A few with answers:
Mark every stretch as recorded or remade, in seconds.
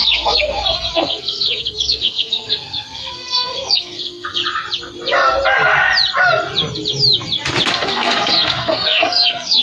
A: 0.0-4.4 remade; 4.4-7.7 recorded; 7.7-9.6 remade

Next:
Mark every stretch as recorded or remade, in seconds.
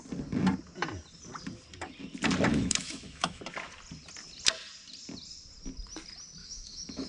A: 0.0-2.5 recorded; 2.5-3.4 remade; 3.4-6.4 recorded; 6.4-7.1 remade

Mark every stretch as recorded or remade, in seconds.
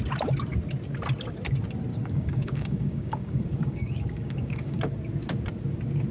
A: 0.0-1.9 recorded; 1.9-4.8 remade; 4.8-6.1 recorded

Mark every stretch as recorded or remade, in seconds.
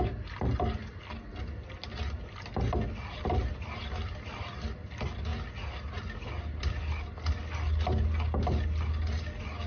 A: 0.0-9.7 recorded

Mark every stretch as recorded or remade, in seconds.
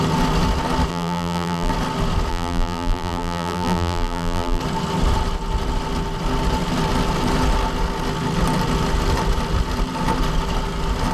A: 0.0-0.9 recorded; 0.9-1.7 remade; 1.7-2.3 recorded; 2.3-4.6 remade; 4.6-11.1 recorded